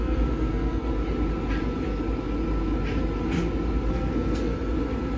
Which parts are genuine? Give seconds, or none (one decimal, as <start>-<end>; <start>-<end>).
0.9-3.9; 4.5-5.2